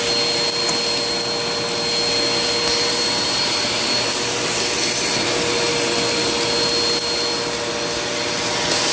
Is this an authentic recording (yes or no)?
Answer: yes